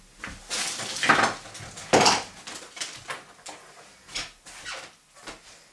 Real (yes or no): yes